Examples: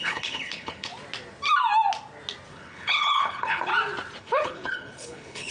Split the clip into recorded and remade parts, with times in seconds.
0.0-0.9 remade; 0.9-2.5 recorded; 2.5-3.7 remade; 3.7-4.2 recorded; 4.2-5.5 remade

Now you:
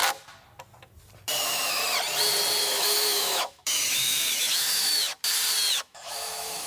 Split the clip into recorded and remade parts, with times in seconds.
0.0-1.4 recorded; 1.4-1.8 remade; 1.8-2.6 recorded; 2.6-5.1 remade; 5.1-5.7 recorded; 5.7-6.7 remade

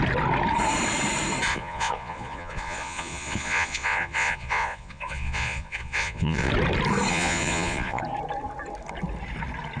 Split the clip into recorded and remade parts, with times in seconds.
0.0-1.5 recorded; 1.5-6.5 remade; 6.5-7.1 recorded; 7.1-8.0 remade; 8.0-9.8 recorded

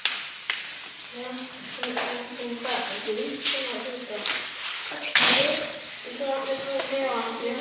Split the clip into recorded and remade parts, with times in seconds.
0.0-4.7 recorded; 4.7-5.9 remade; 5.9-7.6 recorded

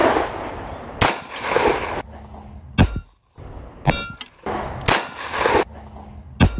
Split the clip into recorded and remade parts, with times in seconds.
0.0-6.6 recorded

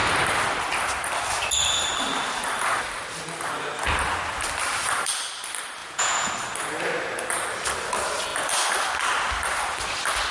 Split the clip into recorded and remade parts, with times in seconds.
0.0-5.8 recorded; 5.8-6.3 remade; 6.3-10.3 recorded

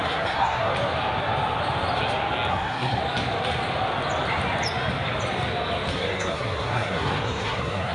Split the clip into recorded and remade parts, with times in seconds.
0.0-0.7 remade; 0.7-2.5 recorded; 2.5-3.0 remade; 3.0-5.9 recorded; 5.9-7.9 remade

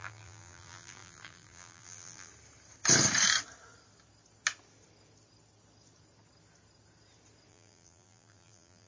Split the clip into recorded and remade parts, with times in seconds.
0.0-2.3 remade; 2.3-7.5 recorded; 7.5-8.9 remade